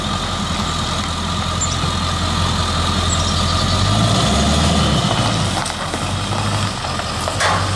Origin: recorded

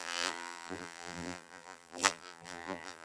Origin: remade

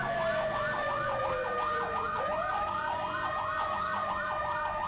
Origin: remade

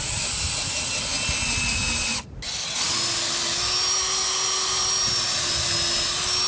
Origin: recorded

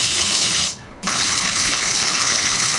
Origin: remade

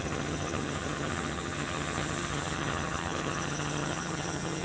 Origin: remade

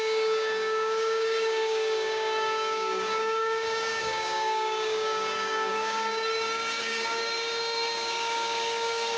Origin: remade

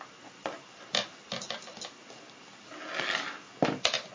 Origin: recorded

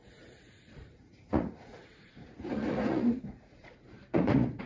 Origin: remade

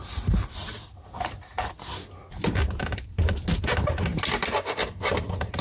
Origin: recorded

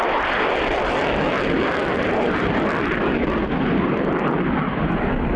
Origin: recorded